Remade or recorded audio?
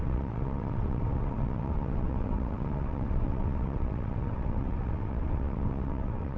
remade